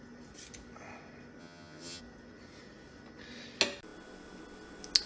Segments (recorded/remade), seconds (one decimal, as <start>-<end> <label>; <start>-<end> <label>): 0.0-1.4 recorded; 1.4-2.0 remade; 2.0-5.1 recorded